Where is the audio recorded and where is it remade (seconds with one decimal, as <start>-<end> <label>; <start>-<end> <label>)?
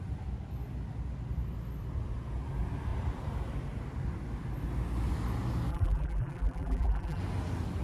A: 0.0-5.7 recorded; 5.7-7.2 remade; 7.2-7.8 recorded